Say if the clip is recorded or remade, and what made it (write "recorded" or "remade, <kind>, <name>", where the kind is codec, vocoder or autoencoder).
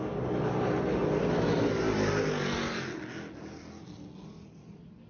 recorded